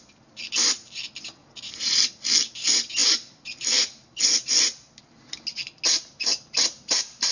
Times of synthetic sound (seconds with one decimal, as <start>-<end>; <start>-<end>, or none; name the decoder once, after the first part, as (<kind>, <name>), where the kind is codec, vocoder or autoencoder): 1.4-2.0 (vocoder, Vocos)